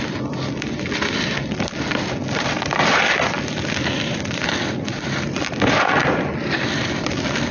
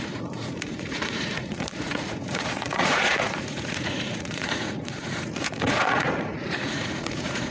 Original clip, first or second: first